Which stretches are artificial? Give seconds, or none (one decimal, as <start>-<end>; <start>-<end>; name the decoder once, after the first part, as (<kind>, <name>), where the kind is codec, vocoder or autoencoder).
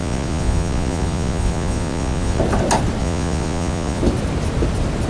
0.0-2.4 (vocoder, Vocos); 3.0-4.0